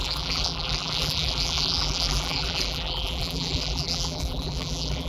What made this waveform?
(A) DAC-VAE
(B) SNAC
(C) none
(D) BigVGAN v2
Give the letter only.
D